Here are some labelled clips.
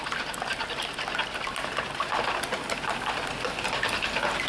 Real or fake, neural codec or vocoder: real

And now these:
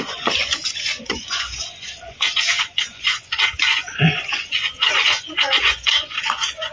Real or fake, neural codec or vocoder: fake, vocoder, Vocos